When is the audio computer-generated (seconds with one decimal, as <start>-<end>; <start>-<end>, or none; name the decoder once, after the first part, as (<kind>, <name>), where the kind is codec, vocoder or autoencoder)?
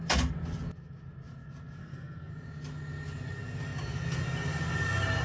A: 1.8-2.3 (codec, SNAC)